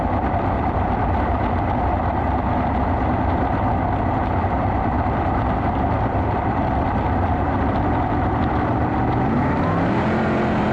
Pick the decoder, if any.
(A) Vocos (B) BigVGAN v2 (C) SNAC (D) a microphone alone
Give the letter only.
B